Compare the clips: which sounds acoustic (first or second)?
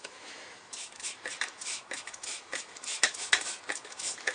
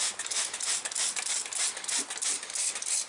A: second